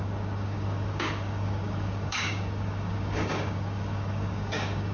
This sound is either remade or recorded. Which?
remade